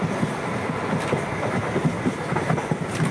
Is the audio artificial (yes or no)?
no